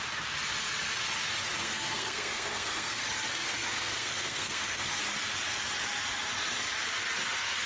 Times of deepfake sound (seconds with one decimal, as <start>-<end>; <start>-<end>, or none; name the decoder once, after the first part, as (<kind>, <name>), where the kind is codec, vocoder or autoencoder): 1.6-3.0 (codec, SNAC); 3.5-5.0